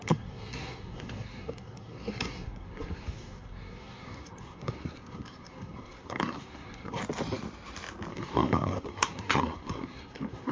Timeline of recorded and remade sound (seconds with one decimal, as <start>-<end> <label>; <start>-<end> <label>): 0.0-7.0 remade; 7.0-8.1 recorded; 8.1-10.5 remade